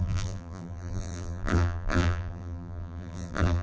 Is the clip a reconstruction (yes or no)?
yes